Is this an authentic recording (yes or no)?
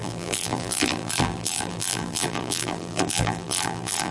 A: no